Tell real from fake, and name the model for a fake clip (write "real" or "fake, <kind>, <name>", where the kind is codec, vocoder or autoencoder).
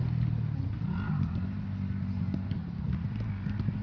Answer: real